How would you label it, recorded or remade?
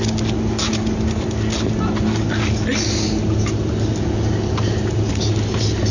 recorded